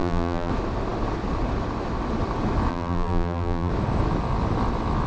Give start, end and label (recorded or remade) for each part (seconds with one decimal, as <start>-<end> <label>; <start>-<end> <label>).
0.0-0.5 remade; 0.5-2.7 recorded; 2.7-3.7 remade; 3.7-5.1 recorded